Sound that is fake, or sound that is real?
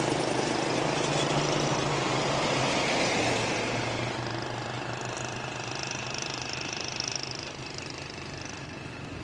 real